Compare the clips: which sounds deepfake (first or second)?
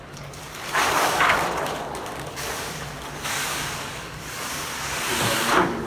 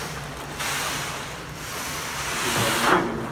first